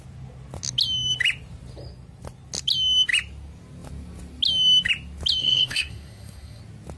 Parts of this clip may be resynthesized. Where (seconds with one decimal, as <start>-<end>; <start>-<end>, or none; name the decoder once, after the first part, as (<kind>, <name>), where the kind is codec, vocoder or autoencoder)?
5.4-6.6 (codec, SNAC)

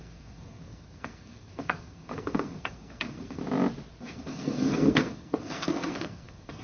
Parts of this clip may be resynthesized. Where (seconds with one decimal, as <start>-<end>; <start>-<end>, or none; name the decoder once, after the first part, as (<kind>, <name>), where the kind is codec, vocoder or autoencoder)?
0.0-3.4 (codec, SNAC); 4.0-6.6